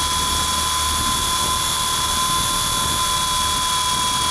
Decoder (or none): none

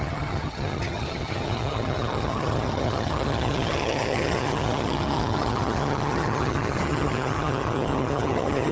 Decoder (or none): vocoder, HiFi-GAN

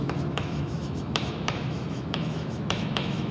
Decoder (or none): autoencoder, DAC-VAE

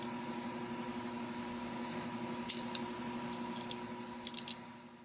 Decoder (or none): none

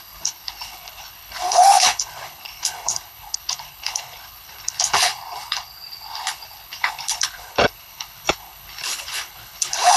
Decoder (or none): codec, HILCodec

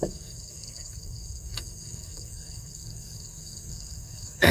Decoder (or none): codec, SNAC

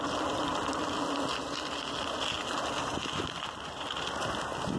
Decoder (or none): none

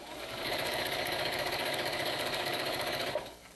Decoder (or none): codec, DAC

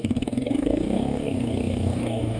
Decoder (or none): codec, DAC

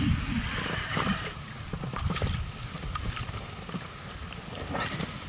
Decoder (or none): vocoder, BigVGAN v2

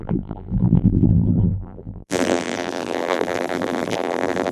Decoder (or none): vocoder, BigVGAN v2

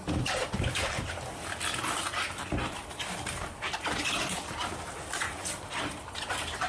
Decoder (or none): none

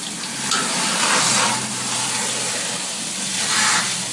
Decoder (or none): none